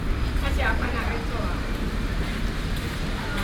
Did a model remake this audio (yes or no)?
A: no